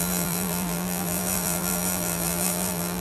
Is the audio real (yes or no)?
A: no